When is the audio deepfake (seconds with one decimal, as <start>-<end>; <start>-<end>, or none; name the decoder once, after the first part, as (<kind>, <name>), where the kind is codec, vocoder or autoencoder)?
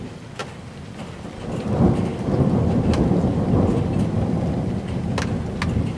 none